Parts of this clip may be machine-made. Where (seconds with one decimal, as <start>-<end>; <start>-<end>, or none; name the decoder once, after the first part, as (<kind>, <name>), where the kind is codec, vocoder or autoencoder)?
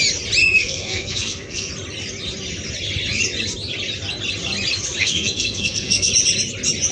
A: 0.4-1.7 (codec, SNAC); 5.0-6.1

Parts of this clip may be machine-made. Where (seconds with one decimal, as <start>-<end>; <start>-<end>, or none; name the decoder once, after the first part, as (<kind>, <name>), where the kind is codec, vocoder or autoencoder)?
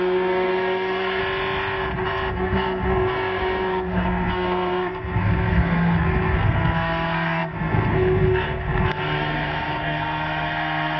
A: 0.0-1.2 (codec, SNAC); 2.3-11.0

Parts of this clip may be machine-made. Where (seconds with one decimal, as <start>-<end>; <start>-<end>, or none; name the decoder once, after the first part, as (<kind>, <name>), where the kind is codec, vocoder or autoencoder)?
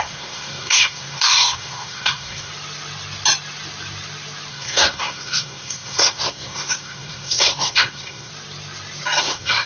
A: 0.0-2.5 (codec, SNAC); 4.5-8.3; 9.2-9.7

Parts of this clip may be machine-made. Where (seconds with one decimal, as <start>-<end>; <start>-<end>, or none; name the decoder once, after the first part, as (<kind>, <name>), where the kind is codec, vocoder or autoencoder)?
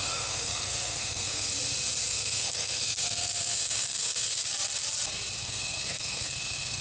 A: 0.0-1.5 (codec, SNAC); 2.1-4.4; 5.4-6.8